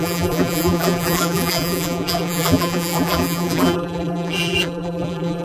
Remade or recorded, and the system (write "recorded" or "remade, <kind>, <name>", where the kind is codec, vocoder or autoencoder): remade, vocoder, BigVGAN v2